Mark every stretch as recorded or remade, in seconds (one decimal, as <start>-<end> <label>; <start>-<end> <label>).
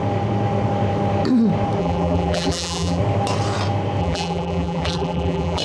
0.0-1.8 recorded; 1.8-3.0 remade; 3.0-4.0 recorded; 4.0-5.6 remade